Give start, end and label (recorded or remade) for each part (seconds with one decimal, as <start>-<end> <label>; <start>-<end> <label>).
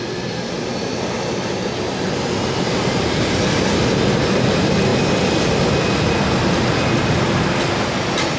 0.0-8.4 recorded